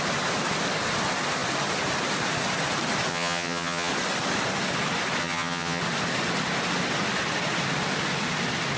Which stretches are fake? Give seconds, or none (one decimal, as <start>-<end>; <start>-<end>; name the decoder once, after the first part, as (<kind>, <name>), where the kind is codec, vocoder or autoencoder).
3.1-3.9 (vocoder, HiFi-GAN); 5.2-5.8